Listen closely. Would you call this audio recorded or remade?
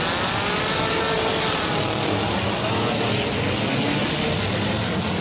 recorded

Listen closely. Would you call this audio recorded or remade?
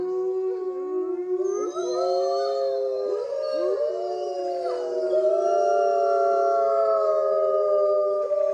recorded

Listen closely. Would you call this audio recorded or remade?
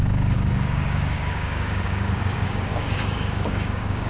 remade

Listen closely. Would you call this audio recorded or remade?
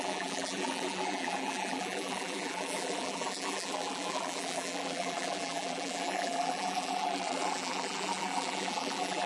remade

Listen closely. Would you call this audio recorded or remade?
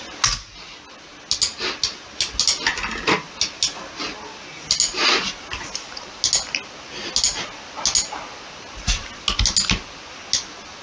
recorded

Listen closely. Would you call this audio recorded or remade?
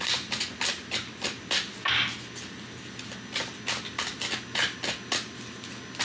recorded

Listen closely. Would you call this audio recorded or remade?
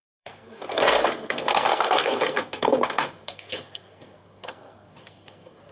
remade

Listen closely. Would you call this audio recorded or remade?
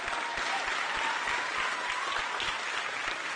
recorded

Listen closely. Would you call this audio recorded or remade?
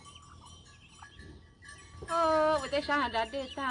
recorded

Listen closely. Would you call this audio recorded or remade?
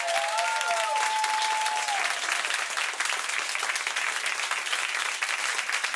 recorded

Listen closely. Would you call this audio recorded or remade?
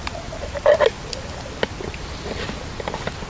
recorded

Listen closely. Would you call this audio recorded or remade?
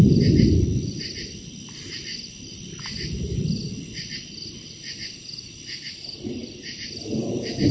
recorded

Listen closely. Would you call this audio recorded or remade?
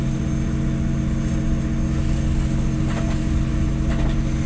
recorded